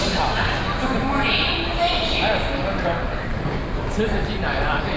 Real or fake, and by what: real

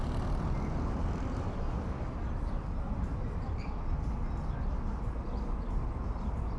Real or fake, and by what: real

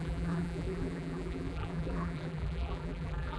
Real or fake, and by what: fake, vocoder, BigVGAN v2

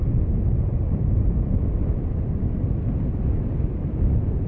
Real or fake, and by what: real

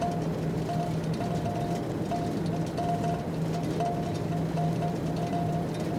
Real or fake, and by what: real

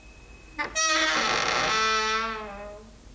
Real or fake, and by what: real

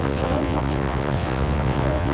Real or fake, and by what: fake, vocoder, WaveNeXt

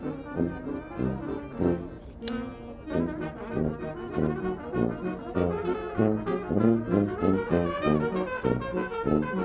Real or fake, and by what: real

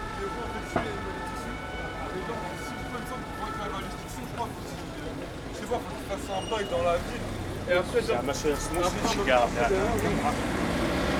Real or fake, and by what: real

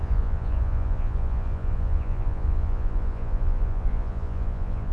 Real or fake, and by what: fake, vocoder, Vocos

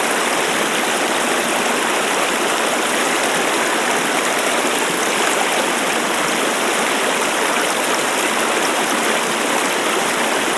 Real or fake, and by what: real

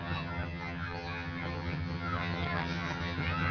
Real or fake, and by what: fake, vocoder, HiFi-GAN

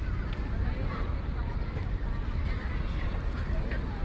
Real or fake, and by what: fake, vocoder, BigVGAN v2